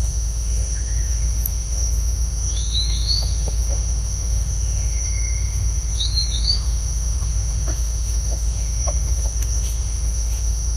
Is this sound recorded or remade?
remade